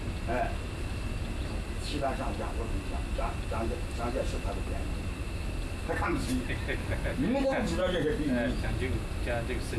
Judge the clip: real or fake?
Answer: real